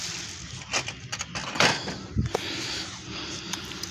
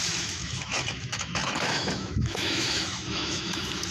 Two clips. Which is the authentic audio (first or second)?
first